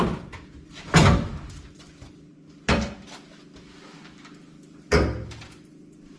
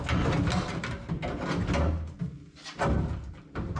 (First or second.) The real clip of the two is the second